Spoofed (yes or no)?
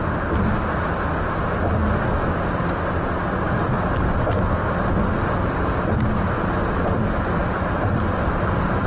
no